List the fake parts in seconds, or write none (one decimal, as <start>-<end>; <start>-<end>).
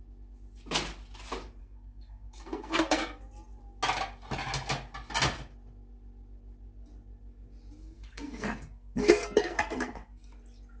1.6-3.3; 7.8-10.3